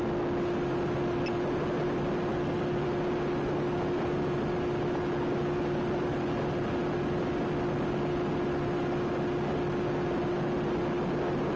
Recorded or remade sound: recorded